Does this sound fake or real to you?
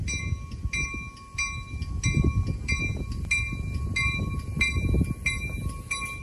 real